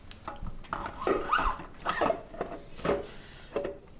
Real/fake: real